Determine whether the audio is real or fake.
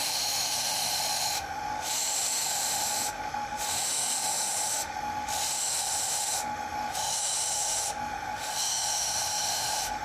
fake